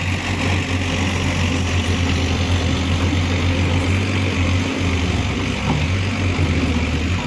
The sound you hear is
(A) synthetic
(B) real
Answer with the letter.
B